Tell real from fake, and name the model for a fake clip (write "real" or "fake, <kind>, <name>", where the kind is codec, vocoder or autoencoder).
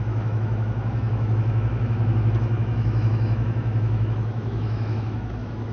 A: fake, autoencoder, DAC-VAE